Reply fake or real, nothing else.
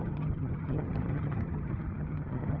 fake